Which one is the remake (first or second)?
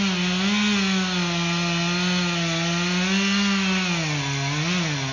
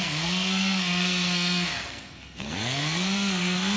second